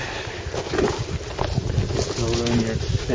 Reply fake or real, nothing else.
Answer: real